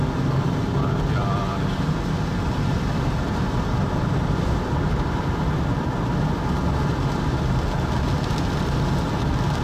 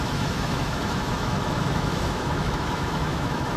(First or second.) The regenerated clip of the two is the second